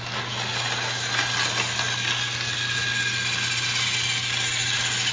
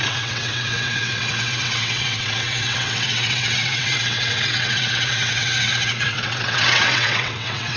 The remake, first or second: second